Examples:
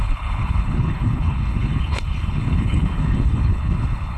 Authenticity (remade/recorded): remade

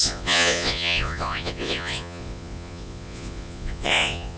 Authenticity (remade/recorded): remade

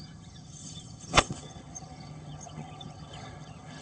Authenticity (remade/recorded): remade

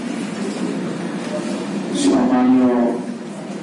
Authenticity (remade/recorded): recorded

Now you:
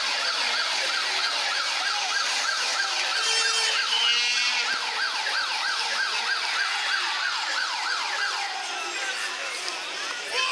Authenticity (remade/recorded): recorded